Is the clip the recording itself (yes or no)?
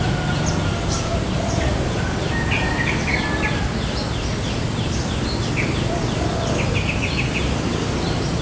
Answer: yes